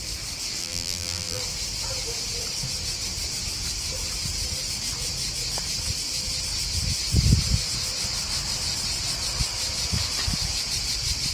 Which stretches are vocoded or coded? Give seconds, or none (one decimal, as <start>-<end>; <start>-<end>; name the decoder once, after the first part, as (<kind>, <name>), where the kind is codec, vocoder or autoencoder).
0.6-1.4 (vocoder, BigVGAN v2)